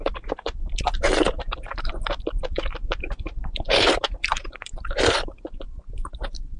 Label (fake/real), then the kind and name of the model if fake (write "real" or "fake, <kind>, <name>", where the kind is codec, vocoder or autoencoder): fake, vocoder, BigVGAN v2